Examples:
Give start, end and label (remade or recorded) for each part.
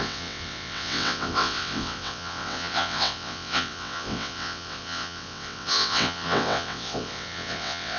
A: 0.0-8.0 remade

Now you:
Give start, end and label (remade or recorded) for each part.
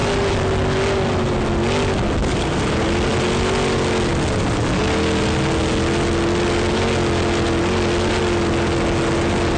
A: 0.0-9.6 recorded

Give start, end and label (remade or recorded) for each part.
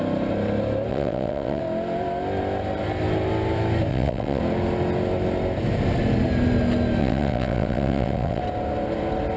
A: 0.0-0.9 recorded; 0.9-1.6 remade; 1.6-3.9 recorded; 3.9-4.4 remade; 4.4-7.0 recorded; 7.0-8.4 remade; 8.4-9.4 recorded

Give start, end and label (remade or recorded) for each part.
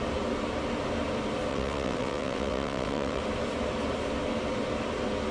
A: 0.0-1.5 recorded; 1.5-3.2 remade; 3.2-5.3 recorded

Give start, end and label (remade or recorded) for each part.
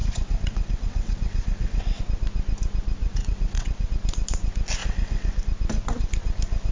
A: 0.0-2.0 remade; 2.0-3.0 recorded; 3.0-3.9 remade; 3.9-4.8 recorded; 4.8-5.4 remade; 5.4-6.7 recorded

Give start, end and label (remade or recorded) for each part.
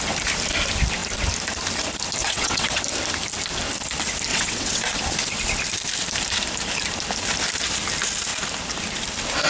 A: 0.0-2.2 recorded; 2.2-2.8 remade; 2.8-4.3 recorded; 4.3-5.1 remade; 5.1-9.5 recorded